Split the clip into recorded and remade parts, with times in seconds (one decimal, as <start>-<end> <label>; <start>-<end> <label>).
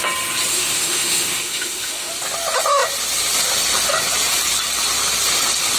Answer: 0.0-0.5 recorded; 0.5-2.1 remade; 2.1-5.8 recorded